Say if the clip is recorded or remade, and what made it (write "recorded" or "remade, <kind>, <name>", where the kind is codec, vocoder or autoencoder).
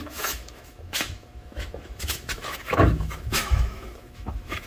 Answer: remade, autoencoder, DAC-VAE